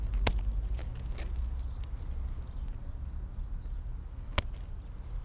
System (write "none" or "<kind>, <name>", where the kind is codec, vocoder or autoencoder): none